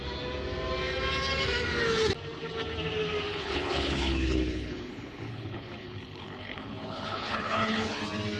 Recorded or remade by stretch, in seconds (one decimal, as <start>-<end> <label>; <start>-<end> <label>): 0.0-3.3 recorded; 3.3-8.0 remade; 8.0-8.4 recorded